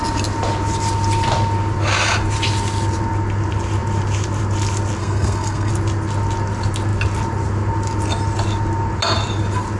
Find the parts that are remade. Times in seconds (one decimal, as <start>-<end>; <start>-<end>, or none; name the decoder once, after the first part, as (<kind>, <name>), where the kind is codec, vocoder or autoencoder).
5.0-5.7 (codec, SNAC)